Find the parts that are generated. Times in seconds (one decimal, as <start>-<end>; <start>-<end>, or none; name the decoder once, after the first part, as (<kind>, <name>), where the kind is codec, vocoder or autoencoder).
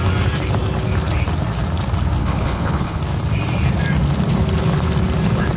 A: 2.2-3.0 (codec, HILCodec)